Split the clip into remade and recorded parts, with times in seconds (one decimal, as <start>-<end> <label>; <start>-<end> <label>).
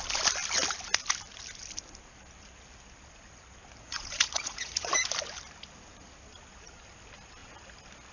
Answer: 0.0-3.8 recorded; 3.8-4.9 remade; 4.9-8.1 recorded